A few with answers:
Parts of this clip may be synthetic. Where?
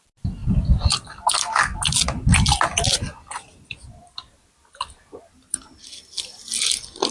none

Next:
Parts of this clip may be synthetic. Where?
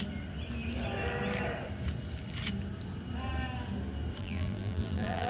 4.2-5.3 (vocoder, BigVGAN v2)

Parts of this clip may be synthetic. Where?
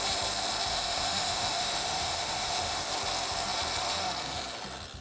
0.7-2.9 (autoencoder, DAC-VAE)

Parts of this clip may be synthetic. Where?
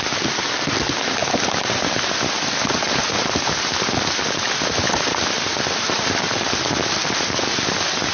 none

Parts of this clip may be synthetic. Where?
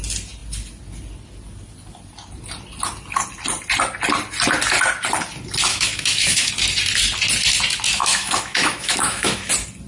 5.7-6.5 (autoencoder, DAC-VAE); 8.0-9.5